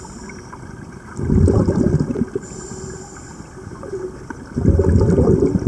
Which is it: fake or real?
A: real